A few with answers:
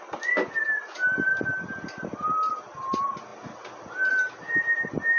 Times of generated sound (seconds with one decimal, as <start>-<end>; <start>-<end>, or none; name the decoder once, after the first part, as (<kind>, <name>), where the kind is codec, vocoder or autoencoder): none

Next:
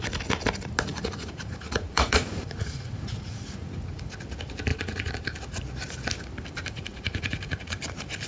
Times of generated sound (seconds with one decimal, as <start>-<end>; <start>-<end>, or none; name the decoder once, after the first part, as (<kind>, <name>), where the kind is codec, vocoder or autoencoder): 0.9-4.1 (vocoder, Vocos); 4.7-5.6; 6.6-7.8

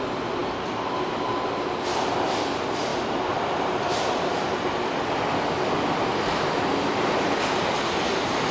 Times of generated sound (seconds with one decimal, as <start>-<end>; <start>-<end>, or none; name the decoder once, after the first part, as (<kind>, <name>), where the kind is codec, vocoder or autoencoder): none